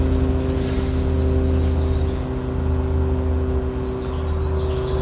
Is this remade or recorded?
recorded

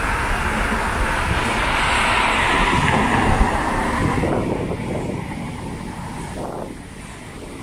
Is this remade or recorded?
recorded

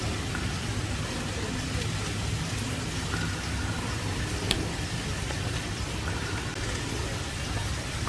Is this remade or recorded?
recorded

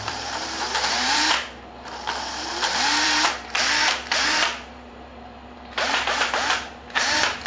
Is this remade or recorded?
remade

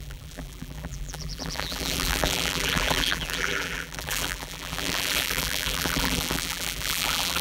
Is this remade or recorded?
remade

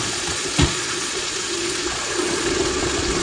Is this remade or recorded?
remade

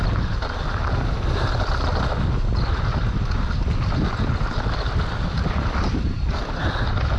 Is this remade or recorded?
recorded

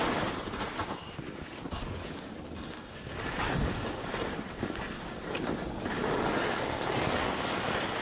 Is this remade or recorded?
recorded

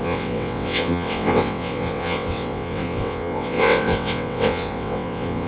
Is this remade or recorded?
remade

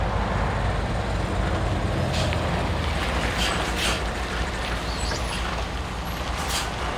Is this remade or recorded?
recorded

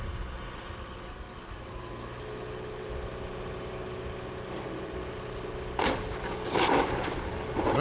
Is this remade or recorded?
recorded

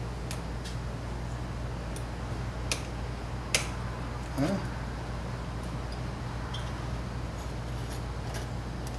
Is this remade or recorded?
recorded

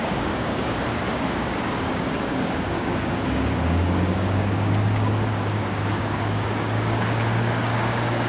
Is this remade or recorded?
remade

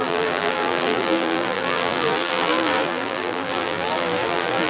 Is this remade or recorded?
remade